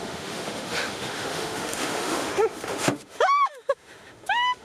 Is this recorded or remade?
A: remade